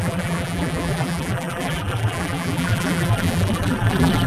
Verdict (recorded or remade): remade